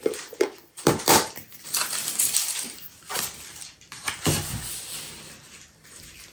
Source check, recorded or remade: remade